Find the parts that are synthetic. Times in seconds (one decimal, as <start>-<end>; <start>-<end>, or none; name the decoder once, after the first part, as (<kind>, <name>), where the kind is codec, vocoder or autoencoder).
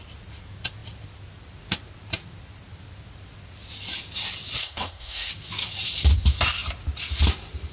4.6-5.3 (codec, SNAC)